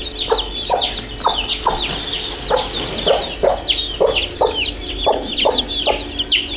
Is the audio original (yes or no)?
yes